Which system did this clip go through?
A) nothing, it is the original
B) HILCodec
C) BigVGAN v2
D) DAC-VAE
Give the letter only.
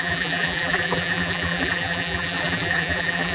C